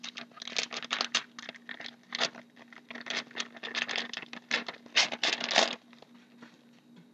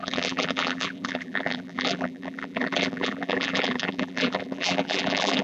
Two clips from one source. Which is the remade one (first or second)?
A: second